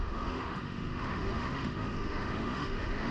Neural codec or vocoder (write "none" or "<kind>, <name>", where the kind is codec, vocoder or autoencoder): autoencoder, DAC-VAE